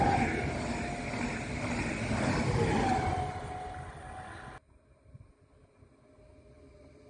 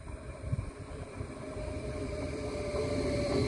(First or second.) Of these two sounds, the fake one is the second